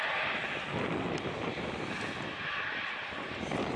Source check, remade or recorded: recorded